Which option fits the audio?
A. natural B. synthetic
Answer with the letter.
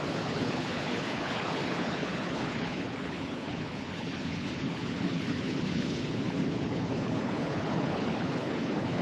B